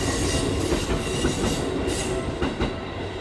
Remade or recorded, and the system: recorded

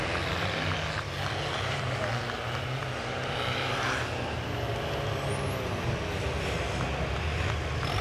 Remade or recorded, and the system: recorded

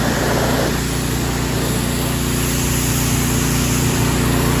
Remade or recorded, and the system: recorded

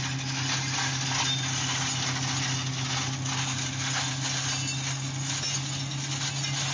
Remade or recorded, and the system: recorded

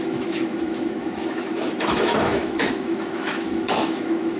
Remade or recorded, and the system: remade, autoencoder, DAC-VAE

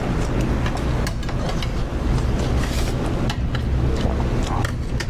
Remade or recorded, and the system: recorded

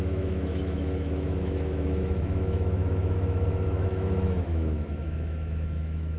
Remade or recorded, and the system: remade, autoencoder, DAC-VAE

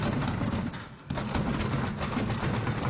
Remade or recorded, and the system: recorded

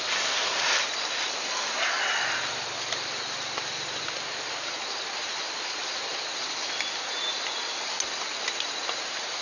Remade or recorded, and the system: recorded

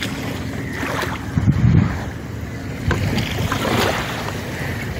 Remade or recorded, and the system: recorded